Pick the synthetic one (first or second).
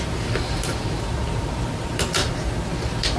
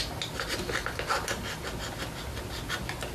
first